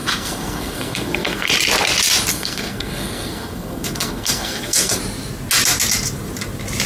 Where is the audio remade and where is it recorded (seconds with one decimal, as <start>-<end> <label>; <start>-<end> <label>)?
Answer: 0.0-1.5 remade; 1.5-2.3 recorded; 2.3-5.0 remade; 5.0-6.9 recorded